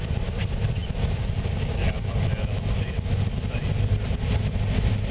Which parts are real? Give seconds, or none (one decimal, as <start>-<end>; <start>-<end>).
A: 0.0-0.8; 3.9-5.1